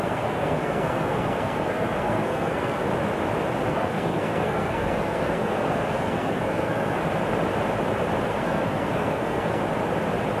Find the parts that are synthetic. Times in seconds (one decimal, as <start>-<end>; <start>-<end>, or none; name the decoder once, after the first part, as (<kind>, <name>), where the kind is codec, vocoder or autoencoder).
0.0-2.8 (codec, SNAC); 3.7-7.0; 8.3-9.6